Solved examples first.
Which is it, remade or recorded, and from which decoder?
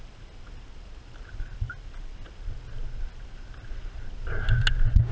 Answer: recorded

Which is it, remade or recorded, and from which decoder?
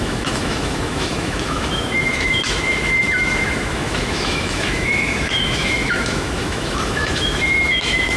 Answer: remade, autoencoder, DAC-VAE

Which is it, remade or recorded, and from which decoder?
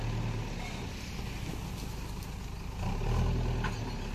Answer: recorded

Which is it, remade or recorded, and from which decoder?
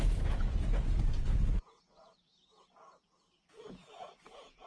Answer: remade, vocoder, Vocos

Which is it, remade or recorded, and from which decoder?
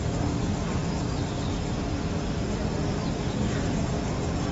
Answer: recorded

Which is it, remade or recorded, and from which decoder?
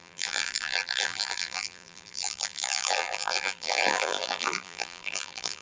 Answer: remade, vocoder, BigVGAN v2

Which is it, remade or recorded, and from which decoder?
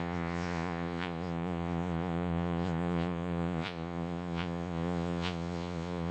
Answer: remade, vocoder, Vocos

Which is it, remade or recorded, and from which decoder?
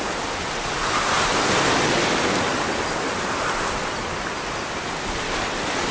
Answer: recorded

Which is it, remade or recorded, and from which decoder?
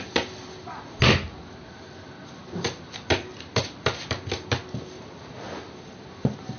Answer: recorded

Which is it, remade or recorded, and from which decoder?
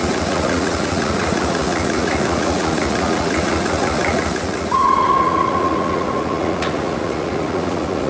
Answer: remade, vocoder, Vocos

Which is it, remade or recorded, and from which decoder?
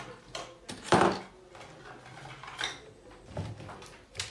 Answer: recorded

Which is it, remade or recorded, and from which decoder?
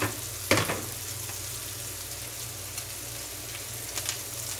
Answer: recorded